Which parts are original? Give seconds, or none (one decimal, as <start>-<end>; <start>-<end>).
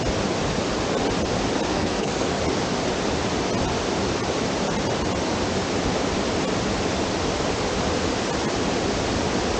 0.0-1.7; 2.4-9.6